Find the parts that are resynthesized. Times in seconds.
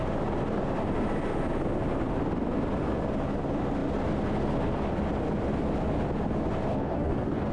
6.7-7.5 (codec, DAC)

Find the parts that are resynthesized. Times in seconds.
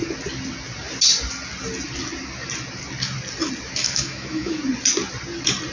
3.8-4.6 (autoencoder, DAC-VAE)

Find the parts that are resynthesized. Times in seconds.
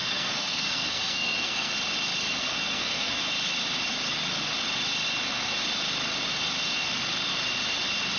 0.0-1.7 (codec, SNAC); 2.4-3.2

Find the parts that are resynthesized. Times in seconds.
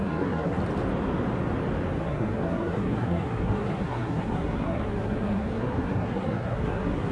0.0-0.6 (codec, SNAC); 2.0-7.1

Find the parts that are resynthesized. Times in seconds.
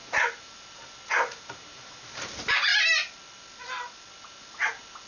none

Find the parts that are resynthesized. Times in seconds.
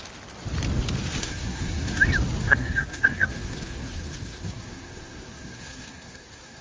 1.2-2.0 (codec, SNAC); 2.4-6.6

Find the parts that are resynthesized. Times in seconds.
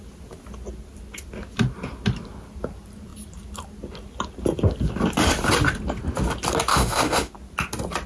6.7-7.3 (autoencoder, DAC-VAE)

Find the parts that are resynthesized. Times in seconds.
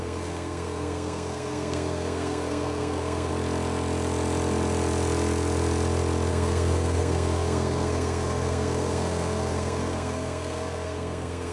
0.0-3.3 (codec, SNAC); 6.3-11.5